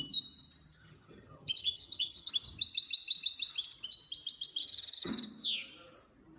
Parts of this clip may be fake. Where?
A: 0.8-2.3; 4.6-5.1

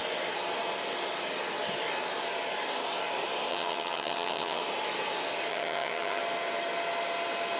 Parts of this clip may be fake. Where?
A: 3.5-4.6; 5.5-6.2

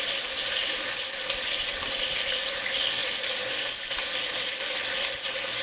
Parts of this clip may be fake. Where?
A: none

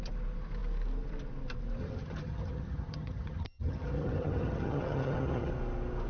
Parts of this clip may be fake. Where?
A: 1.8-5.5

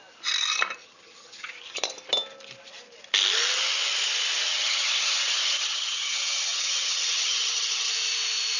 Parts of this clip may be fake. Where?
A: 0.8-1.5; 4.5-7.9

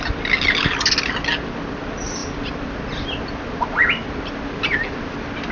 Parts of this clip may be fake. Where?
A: none

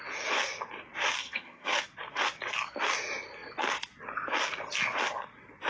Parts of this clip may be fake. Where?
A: 1.2-1.8